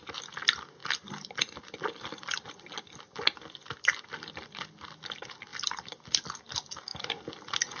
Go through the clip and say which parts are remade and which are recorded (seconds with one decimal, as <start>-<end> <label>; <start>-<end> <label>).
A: 0.0-7.8 recorded